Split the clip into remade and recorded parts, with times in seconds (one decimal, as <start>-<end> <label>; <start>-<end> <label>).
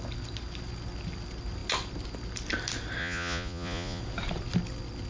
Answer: 0.0-3.0 recorded; 3.0-4.0 remade; 4.0-5.1 recorded